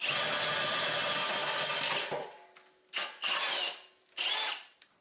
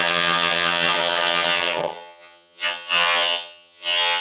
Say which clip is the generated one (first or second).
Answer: second